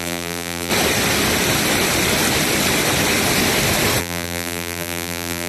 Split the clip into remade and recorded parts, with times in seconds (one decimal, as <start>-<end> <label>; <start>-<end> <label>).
0.0-0.7 remade; 0.7-4.0 recorded; 4.0-5.5 remade